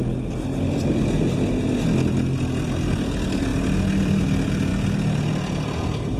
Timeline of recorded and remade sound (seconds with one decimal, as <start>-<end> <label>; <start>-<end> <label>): 0.0-6.2 recorded